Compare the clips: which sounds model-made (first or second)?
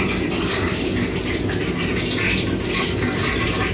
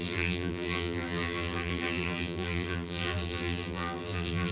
second